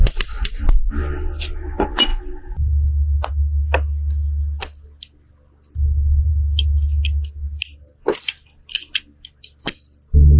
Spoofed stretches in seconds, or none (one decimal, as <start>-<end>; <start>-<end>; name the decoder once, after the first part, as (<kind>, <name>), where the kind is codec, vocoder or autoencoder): none